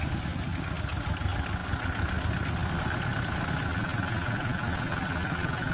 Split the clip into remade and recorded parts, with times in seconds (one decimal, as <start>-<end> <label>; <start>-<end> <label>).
0.0-5.7 recorded